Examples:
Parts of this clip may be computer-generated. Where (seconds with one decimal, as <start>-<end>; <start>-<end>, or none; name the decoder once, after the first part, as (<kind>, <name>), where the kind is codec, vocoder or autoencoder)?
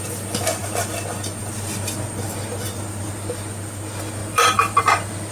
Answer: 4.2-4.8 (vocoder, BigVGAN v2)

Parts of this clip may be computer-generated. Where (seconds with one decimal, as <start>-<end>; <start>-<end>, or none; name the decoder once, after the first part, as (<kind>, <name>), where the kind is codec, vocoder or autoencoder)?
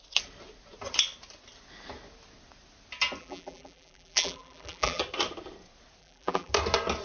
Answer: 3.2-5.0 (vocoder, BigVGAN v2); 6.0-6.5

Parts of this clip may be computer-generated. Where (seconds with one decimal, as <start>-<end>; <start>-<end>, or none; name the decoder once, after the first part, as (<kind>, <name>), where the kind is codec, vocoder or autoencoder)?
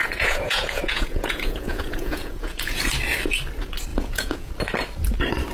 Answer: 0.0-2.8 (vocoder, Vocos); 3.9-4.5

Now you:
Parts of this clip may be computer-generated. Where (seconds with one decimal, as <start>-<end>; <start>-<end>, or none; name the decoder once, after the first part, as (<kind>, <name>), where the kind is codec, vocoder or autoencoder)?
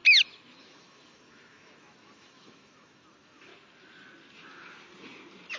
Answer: 0.6-3.5 (autoencoder, DAC-VAE)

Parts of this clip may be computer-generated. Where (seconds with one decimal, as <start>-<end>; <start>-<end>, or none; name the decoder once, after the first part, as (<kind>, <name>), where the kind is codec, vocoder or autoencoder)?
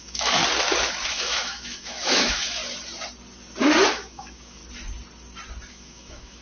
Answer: 0.0-0.4 (autoencoder, DAC-VAE); 1.1-2.6; 3.9-4.6; 5.7-6.4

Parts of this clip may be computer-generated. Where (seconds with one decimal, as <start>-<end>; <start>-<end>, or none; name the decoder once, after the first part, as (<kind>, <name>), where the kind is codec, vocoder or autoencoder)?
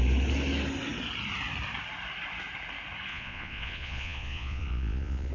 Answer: 3.1-5.3 (vocoder, Vocos)